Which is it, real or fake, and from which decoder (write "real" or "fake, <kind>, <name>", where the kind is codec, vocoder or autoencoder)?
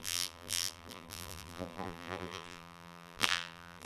fake, vocoder, BigVGAN v2